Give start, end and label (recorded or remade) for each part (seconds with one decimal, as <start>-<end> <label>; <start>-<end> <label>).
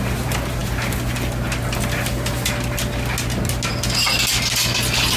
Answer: 0.0-5.2 recorded